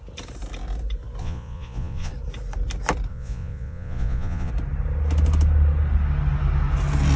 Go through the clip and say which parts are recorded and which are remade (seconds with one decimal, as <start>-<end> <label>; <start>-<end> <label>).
0.0-1.2 recorded; 1.2-2.1 remade; 2.1-3.1 recorded; 3.1-4.5 remade; 4.5-7.2 recorded